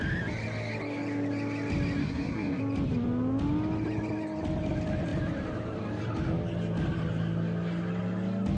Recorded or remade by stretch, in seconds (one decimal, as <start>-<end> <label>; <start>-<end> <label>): 0.0-2.0 recorded; 2.0-2.6 remade; 2.6-8.6 recorded